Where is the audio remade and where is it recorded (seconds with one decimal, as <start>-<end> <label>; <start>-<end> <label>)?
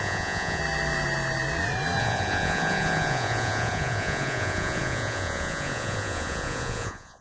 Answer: 0.0-0.6 remade; 0.6-2.0 recorded; 2.0-7.2 remade